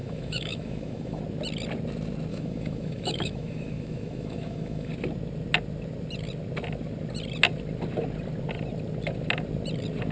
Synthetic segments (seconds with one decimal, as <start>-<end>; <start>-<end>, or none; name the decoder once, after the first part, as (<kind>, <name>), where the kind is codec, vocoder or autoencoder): 0.0-1.2 (autoencoder, DAC-VAE); 2.3-4.9